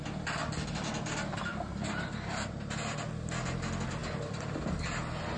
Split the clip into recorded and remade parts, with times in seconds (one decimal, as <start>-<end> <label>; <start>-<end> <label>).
0.0-5.4 recorded